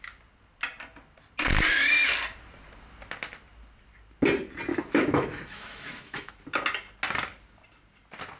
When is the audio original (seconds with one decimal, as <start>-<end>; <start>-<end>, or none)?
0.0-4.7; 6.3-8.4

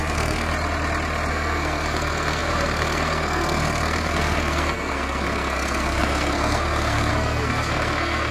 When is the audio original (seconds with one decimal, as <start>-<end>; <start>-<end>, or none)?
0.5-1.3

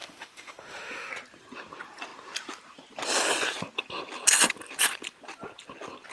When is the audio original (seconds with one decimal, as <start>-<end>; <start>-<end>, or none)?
1.1-6.1